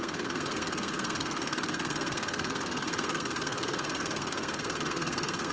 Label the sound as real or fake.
fake